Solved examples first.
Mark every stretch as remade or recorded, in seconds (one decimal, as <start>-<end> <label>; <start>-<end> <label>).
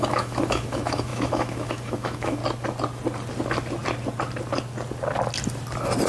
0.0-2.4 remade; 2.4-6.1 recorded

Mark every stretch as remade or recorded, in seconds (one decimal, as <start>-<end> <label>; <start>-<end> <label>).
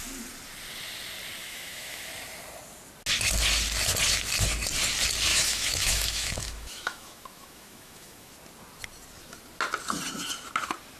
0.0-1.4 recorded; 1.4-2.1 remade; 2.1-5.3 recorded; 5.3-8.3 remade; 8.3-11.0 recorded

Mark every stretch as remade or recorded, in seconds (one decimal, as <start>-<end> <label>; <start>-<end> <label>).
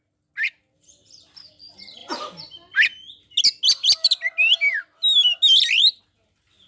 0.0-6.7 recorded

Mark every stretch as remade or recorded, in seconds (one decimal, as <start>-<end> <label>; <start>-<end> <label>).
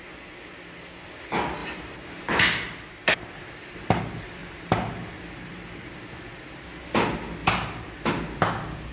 0.0-1.6 recorded; 1.6-4.0 remade; 4.0-4.4 recorded; 4.4-5.9 remade; 5.9-7.4 recorded; 7.4-8.1 remade; 8.1-8.9 recorded